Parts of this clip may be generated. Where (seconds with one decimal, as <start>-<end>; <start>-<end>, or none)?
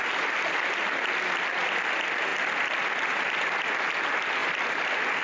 none